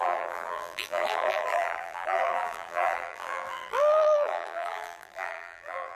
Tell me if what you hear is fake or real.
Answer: fake